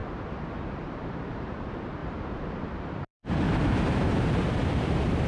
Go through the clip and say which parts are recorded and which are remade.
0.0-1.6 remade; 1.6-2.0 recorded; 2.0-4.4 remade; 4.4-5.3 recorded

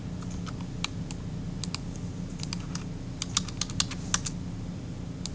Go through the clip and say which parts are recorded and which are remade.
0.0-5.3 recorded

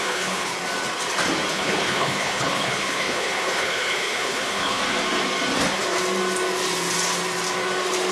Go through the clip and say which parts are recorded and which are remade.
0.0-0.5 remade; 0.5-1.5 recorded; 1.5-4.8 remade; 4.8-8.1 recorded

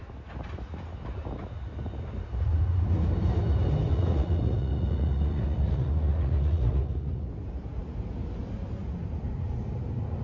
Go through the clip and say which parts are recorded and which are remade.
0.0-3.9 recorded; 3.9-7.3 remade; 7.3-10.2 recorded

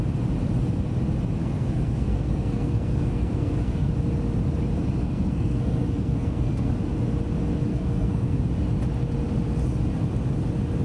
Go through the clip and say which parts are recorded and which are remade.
0.0-1.4 recorded; 1.4-3.9 remade; 3.9-5.0 recorded; 5.0-6.7 remade; 6.7-7.7 recorded; 7.7-8.4 remade; 8.4-10.8 recorded

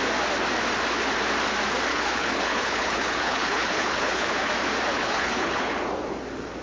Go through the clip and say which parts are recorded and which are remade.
0.0-1.9 recorded; 1.9-4.5 remade; 4.5-4.9 recorded; 4.9-5.7 remade; 5.7-6.6 recorded